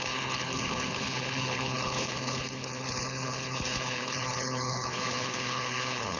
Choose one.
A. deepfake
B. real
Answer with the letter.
A